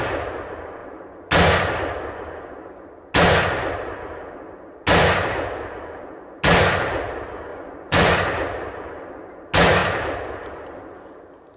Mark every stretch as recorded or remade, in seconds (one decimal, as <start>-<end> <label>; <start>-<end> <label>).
0.0-7.5 recorded; 7.5-8.1 remade; 8.1-11.6 recorded